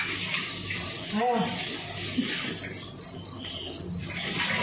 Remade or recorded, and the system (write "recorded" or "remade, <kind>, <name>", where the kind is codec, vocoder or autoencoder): recorded